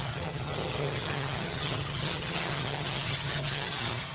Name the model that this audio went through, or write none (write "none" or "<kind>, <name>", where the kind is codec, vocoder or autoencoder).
vocoder, HiFi-GAN